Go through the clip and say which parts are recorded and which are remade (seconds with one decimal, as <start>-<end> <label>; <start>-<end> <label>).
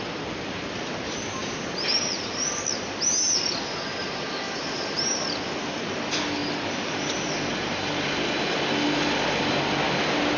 0.0-10.4 recorded